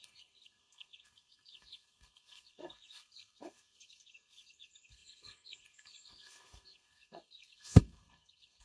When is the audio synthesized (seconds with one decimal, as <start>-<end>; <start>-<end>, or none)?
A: 0.0-8.6